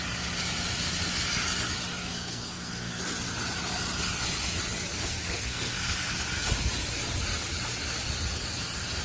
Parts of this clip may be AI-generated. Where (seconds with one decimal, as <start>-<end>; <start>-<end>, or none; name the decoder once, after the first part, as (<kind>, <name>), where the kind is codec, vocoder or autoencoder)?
1.9-3.0 (codec, SNAC); 4.9-5.9